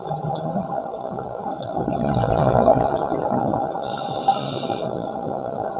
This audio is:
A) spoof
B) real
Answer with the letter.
A